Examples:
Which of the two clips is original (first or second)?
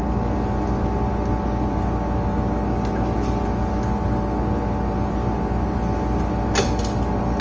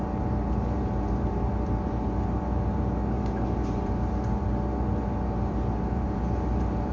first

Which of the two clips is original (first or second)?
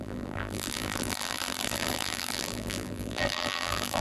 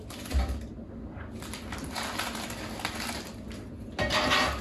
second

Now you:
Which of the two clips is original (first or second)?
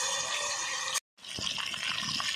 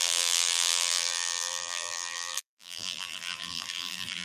first